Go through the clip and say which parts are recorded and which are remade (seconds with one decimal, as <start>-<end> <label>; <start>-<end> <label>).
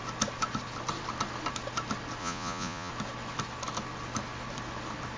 0.0-2.2 recorded; 2.2-2.9 remade; 2.9-5.2 recorded